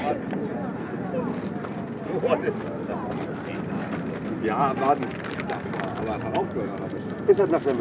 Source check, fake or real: real